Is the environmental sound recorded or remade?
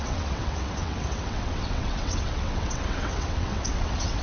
remade